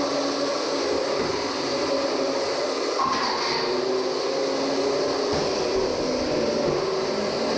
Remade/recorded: recorded